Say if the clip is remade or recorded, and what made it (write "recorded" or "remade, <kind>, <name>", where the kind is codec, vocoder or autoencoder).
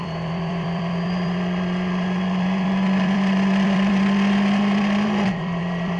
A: remade, vocoder, BigVGAN v2